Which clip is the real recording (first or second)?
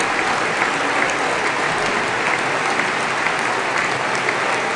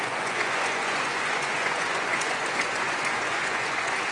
first